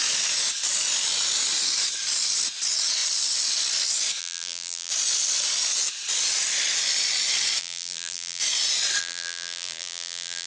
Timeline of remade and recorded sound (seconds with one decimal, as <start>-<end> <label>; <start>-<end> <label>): 0.0-4.2 recorded; 4.2-4.9 remade; 4.9-7.6 recorded; 7.6-8.4 remade; 8.4-9.0 recorded; 9.0-10.5 remade